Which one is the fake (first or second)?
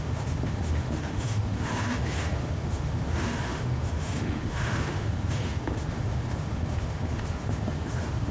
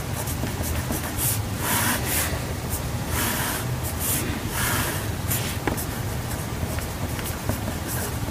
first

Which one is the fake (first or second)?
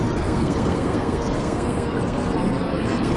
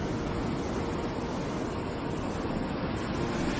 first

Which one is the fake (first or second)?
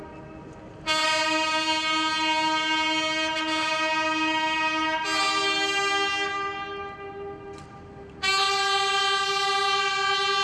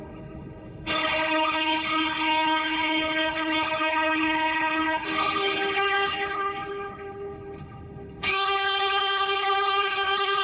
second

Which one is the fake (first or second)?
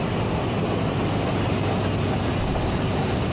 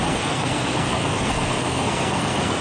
second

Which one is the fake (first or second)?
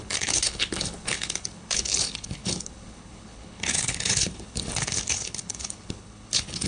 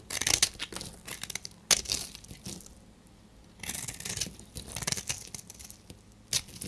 first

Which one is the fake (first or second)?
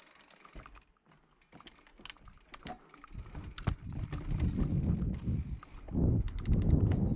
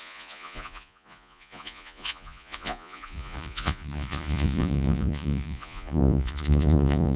second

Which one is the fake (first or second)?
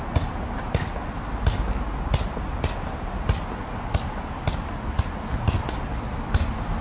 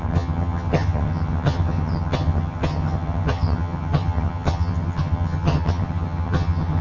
second